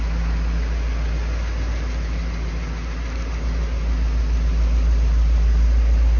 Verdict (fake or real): real